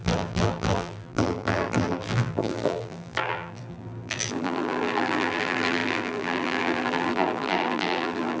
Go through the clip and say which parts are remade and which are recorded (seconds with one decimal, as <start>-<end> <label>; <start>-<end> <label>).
0.0-8.4 remade